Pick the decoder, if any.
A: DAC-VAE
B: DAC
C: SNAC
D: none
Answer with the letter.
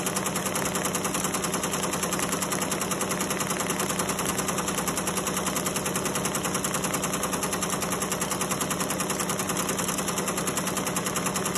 D